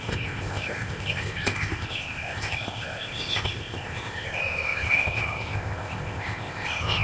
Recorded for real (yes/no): no